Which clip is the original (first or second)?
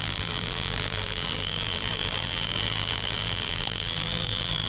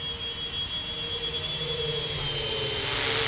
second